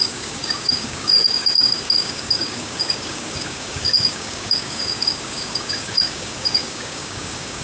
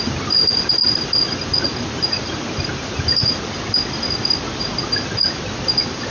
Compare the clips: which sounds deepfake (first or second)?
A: first